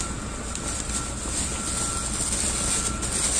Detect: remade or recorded recorded